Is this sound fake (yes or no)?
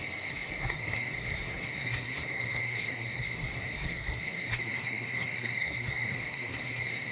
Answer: yes